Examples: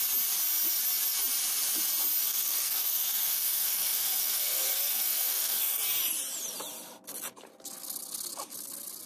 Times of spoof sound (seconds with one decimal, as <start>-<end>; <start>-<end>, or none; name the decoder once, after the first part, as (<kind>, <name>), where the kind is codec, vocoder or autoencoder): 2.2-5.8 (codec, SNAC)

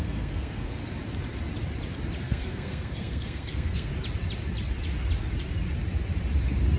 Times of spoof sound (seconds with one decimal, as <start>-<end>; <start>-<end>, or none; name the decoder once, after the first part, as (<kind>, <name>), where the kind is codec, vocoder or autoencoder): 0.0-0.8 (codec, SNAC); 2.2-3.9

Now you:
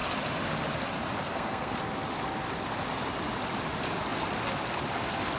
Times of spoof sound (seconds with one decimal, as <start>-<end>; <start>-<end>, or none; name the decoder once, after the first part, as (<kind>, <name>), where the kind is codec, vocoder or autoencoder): 1.2-1.8 (codec, SNAC)

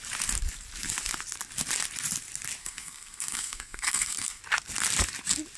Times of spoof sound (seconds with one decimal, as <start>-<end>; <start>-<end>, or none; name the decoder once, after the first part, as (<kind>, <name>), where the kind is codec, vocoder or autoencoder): 2.6-4.4 (codec, SNAC)